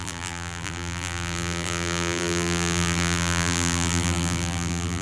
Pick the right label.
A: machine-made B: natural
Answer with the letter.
A